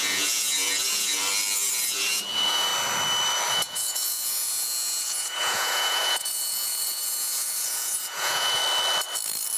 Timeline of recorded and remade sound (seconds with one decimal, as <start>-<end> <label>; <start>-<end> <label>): 0.0-1.2 remade; 1.2-1.7 recorded; 1.7-2.7 remade; 2.7-3.5 recorded; 3.5-8.6 remade; 8.6-9.6 recorded